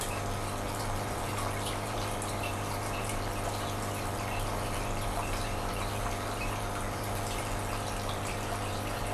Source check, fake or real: fake